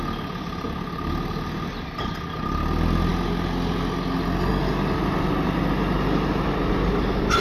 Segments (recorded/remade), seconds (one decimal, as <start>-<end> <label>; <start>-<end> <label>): 0.0-7.4 recorded